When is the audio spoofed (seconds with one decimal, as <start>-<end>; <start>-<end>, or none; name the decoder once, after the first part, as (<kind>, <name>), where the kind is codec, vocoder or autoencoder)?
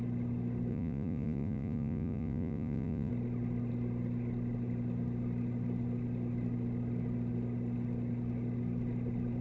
0.7-3.1 (vocoder, Vocos)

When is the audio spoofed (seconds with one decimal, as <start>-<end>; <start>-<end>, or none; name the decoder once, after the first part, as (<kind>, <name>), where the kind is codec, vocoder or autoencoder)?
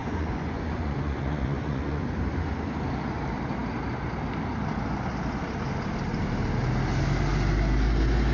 0.0-2.0 (vocoder, Vocos)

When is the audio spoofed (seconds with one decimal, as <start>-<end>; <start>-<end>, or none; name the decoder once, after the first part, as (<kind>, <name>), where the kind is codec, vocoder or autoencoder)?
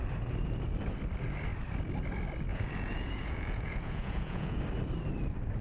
2.5-4.6 (vocoder, Vocos)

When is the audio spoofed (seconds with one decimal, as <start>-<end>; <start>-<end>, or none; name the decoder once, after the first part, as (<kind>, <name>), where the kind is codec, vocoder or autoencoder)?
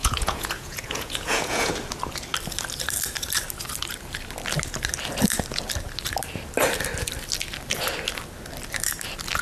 0.0-1.7 (vocoder, Vocos)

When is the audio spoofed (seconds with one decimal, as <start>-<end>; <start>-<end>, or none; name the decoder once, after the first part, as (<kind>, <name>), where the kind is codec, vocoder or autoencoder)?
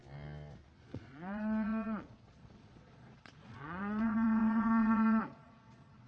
0.8-6.1 (vocoder, Vocos)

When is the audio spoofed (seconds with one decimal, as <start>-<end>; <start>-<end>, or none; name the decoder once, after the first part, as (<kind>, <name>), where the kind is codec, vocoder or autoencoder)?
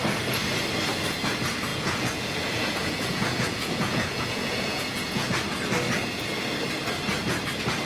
1.7-5.3 (vocoder, Vocos)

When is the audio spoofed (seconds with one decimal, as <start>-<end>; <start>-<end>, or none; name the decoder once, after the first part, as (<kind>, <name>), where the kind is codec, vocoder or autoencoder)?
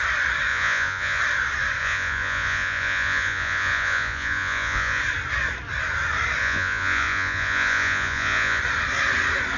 0.5-1.2 (vocoder, Vocos); 1.8-5.0; 6.4-8.6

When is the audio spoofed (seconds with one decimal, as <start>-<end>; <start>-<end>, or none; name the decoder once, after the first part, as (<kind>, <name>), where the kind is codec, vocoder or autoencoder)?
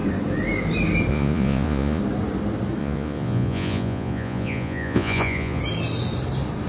1.1-2.0 (vocoder, Vocos); 2.8-5.6